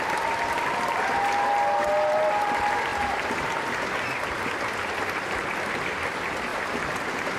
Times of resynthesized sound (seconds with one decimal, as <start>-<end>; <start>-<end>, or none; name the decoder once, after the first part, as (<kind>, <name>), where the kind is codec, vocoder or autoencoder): 6.5-7.4 (vocoder, BigVGAN v2)